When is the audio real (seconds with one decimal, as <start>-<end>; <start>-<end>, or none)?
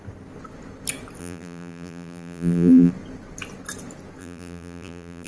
0.0-1.2; 2.9-4.2